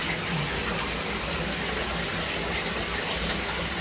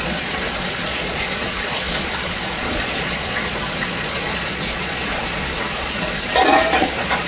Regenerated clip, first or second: second